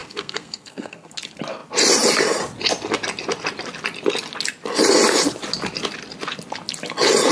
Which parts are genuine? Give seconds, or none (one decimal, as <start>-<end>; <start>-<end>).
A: 1.1-7.3